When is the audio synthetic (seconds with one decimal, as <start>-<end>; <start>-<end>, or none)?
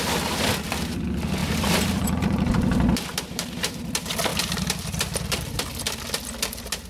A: 0.0-6.9